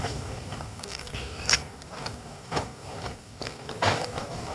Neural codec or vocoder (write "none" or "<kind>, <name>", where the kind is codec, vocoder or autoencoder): codec, DAC